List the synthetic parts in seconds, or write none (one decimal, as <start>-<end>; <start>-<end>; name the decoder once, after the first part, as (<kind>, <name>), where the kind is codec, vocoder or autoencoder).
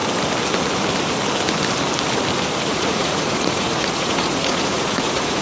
2.7-5.4 (vocoder, Vocos)